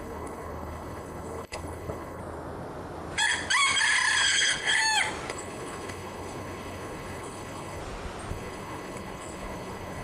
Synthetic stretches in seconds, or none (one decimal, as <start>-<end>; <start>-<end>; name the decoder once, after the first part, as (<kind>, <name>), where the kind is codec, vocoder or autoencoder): 0.0-2.2 (codec, HILCodec); 4.2-4.7; 5.3-7.8; 8.3-10.0